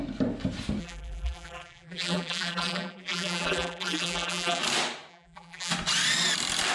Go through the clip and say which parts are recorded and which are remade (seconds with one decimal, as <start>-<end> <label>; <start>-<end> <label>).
0.0-0.8 recorded; 0.8-4.6 remade; 4.6-5.1 recorded; 5.1-5.7 remade; 5.7-6.7 recorded